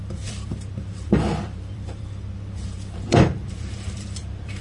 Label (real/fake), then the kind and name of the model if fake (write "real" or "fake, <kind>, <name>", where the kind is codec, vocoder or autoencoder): fake, vocoder, BigVGAN v2